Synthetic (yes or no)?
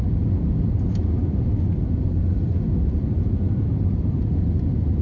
no